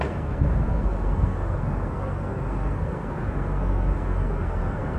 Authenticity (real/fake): fake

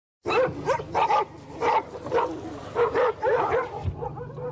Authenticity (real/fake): real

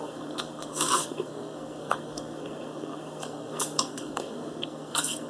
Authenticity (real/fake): fake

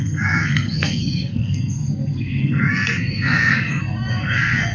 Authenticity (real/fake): fake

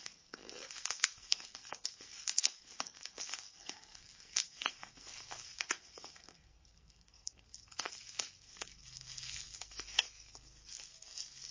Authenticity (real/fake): fake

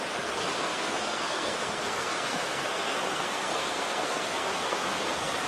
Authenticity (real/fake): fake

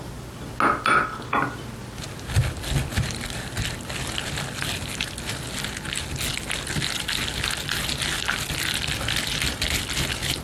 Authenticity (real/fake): real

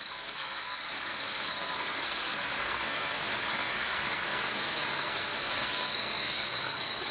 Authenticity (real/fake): fake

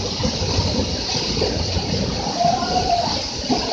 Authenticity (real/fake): real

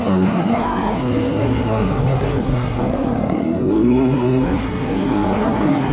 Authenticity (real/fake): fake